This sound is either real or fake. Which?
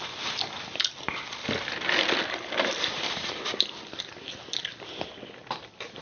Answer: real